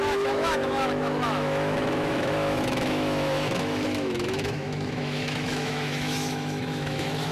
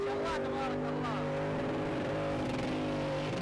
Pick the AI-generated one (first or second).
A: first